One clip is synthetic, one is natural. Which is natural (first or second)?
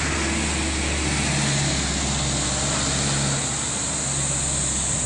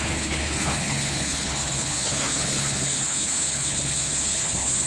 first